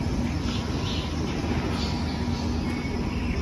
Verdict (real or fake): real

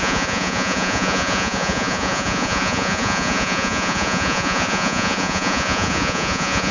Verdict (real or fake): fake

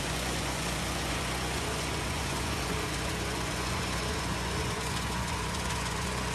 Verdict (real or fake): fake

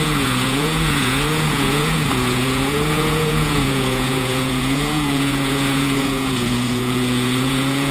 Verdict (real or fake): fake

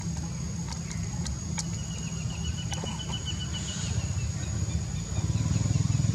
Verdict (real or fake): real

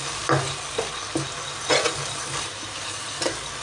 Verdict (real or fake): real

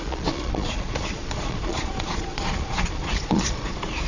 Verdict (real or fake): fake